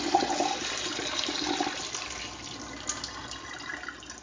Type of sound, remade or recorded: recorded